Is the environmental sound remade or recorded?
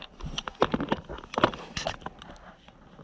recorded